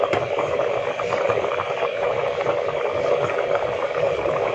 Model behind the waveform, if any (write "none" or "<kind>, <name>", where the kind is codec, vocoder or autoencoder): codec, DAC